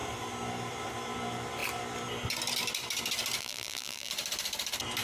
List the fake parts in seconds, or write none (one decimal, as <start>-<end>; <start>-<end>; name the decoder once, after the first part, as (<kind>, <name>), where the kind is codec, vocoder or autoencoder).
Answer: 3.4-4.1 (vocoder, BigVGAN v2)